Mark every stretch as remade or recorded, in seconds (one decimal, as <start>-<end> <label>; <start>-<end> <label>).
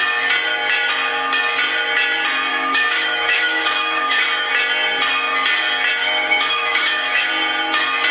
0.0-2.5 recorded; 2.5-4.5 remade; 4.5-6.0 recorded; 6.0-7.3 remade; 7.3-8.1 recorded